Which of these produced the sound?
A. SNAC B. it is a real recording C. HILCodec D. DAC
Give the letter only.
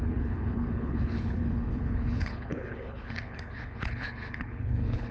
C